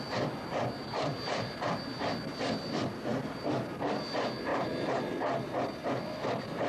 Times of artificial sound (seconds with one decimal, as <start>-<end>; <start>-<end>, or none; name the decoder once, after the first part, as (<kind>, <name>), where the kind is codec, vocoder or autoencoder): 0.8-1.8 (vocoder, BigVGAN v2); 4.5-5.0